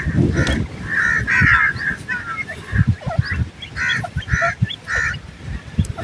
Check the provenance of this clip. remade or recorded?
recorded